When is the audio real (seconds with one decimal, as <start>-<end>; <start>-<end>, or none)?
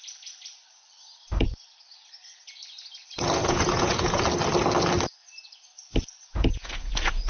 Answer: 0.0-3.4; 4.2-6.3